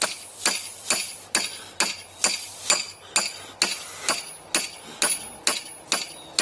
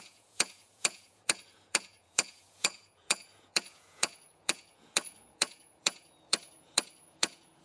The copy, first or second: second